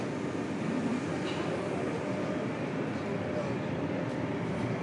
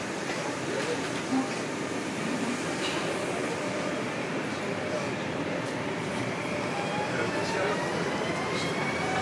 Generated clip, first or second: second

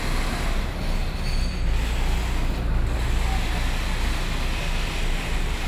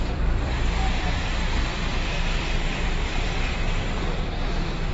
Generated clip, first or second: second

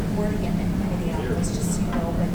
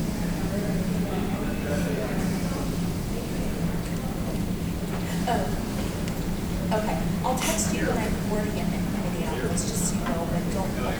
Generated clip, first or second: second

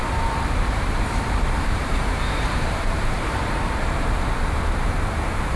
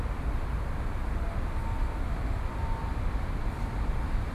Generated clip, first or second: first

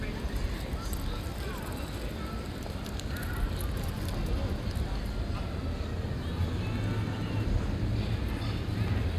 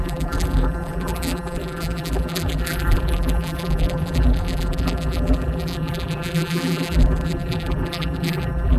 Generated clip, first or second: second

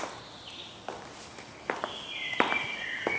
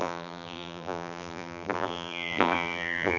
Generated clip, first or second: second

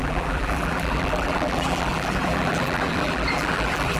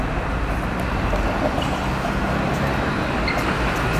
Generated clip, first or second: first